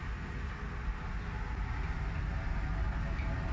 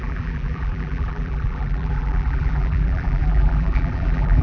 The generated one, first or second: second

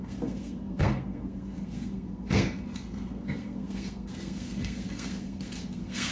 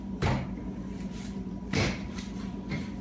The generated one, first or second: first